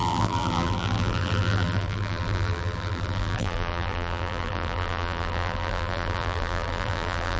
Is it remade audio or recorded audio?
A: remade